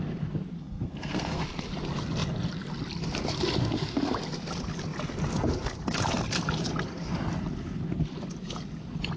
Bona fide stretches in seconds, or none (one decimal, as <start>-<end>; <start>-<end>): 0.0-0.6; 1.4-9.2